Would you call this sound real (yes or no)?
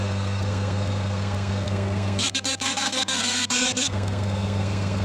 no